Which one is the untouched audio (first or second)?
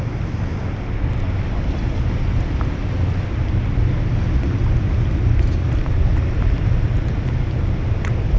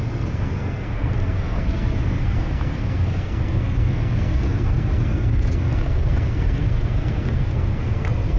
first